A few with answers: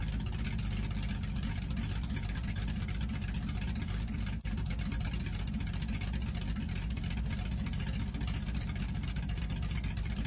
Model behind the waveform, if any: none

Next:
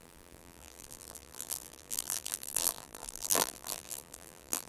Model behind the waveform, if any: vocoder, BigVGAN v2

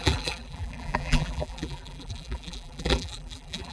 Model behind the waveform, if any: vocoder, BigVGAN v2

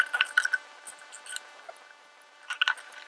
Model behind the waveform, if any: none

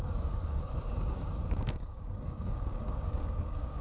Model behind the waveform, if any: codec, DAC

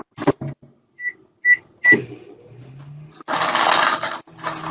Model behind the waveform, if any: none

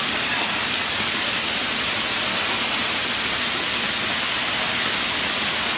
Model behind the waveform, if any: none